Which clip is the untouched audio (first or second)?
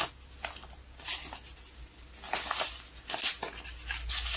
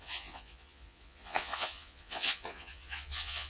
first